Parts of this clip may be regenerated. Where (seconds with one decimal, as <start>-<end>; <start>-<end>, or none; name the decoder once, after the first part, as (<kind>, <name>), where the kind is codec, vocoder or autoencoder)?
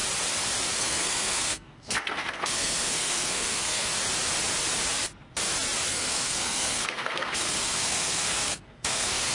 0.8-3.9 (codec, SNAC); 5.9-9.3